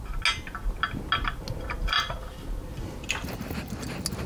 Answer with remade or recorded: recorded